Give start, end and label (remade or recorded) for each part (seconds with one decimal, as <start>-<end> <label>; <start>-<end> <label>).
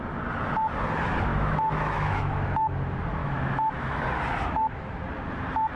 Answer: 0.0-1.3 recorded; 1.3-2.3 remade; 2.3-3.2 recorded; 3.2-4.0 remade; 4.0-5.8 recorded